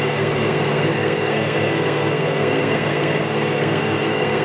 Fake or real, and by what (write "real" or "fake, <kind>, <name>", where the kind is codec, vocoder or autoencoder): fake, codec, SNAC